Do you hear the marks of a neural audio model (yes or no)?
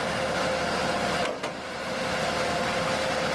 no